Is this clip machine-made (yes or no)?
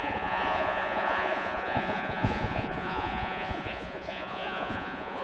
yes